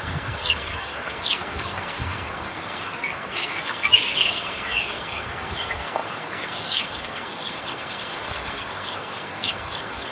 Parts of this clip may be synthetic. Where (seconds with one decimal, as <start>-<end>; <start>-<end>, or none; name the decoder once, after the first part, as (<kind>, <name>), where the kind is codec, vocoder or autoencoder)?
0.0-10.1 (codec, SNAC)